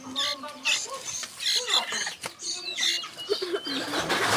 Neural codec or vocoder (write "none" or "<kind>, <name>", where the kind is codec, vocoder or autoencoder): none